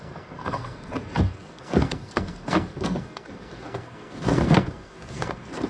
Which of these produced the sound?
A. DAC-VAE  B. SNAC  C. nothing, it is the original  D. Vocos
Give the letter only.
B